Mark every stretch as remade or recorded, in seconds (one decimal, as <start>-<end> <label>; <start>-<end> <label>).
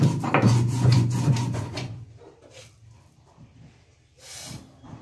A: 0.0-0.4 recorded; 0.4-2.1 remade; 2.1-5.0 recorded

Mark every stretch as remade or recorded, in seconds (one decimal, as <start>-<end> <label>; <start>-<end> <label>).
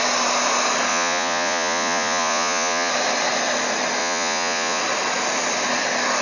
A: 0.0-0.9 recorded; 0.9-2.9 remade; 2.9-4.0 recorded; 4.0-4.8 remade; 4.8-6.2 recorded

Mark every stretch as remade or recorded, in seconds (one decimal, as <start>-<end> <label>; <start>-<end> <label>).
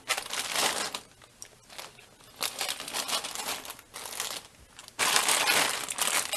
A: 0.0-6.4 recorded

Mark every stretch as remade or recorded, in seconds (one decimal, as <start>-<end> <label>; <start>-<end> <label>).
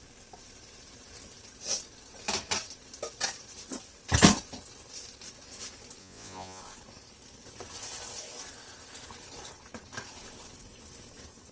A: 0.0-6.0 recorded; 6.0-6.6 remade; 6.6-11.5 recorded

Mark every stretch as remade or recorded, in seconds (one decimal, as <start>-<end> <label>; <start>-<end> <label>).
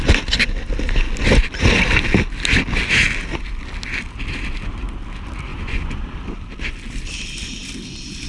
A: 0.0-5.5 recorded; 5.5-6.0 remade; 6.0-8.3 recorded